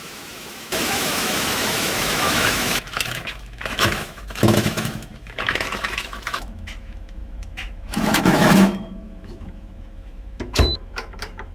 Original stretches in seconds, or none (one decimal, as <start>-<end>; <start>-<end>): none